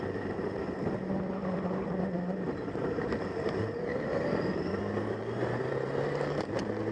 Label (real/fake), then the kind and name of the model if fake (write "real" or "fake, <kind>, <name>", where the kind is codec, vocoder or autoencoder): fake, vocoder, BigVGAN v2